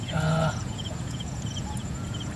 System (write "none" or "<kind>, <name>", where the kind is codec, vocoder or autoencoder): vocoder, Vocos